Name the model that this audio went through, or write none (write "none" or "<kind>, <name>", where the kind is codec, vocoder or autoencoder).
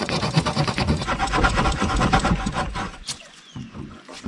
vocoder, Vocos